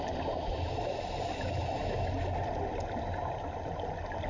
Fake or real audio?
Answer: real